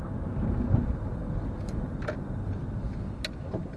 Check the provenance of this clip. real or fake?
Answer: real